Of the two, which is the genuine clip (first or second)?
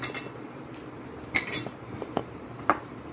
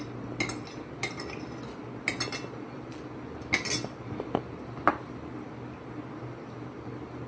second